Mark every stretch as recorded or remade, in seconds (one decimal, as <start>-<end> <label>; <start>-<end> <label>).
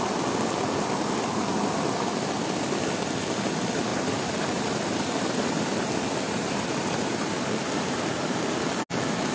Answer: 0.0-3.9 recorded; 3.9-8.5 remade; 8.5-9.3 recorded